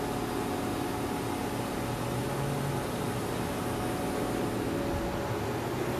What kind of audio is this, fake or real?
real